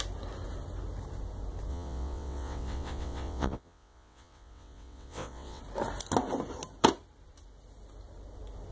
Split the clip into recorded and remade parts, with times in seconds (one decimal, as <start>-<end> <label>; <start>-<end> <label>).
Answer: 0.0-1.7 recorded; 1.7-5.6 remade; 5.6-8.7 recorded